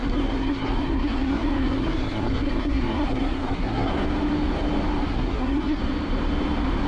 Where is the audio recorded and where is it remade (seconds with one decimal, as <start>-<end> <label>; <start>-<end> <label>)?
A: 0.0-3.9 remade; 3.9-5.1 recorded; 5.1-5.8 remade; 5.8-6.9 recorded